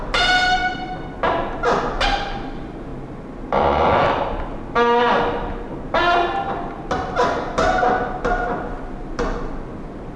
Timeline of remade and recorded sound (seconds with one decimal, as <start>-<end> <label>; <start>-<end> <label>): 0.0-10.2 recorded